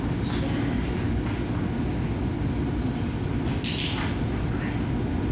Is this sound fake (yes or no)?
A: no